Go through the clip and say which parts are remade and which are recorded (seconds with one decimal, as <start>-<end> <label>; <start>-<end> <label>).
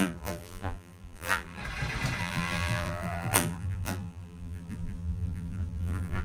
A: 0.0-1.6 remade; 1.6-2.2 recorded; 2.2-6.2 remade